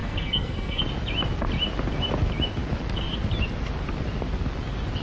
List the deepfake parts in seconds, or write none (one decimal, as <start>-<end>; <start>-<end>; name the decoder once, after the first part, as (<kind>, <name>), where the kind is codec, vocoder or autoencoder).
0.0-0.8 (codec, SNAC)